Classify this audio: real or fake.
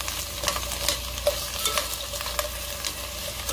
real